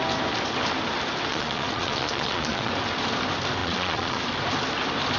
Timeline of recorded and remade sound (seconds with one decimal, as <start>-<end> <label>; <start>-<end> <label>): 0.0-1.3 recorded; 1.3-2.7 remade; 2.7-3.6 recorded; 3.6-4.2 remade; 4.2-5.2 recorded